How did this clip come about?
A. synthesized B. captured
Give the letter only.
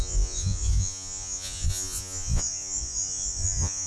A